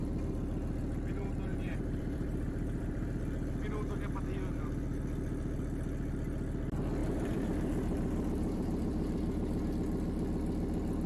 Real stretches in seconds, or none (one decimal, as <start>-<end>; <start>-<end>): 0.0-1.5; 3.2-7.0; 9.7-11.1